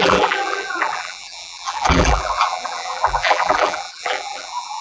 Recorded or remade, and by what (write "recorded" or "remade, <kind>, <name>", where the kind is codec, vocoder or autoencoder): remade, vocoder, BigVGAN v2